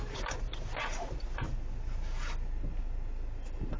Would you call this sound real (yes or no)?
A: yes